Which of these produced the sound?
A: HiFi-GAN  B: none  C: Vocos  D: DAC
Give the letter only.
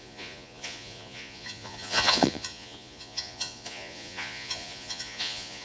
C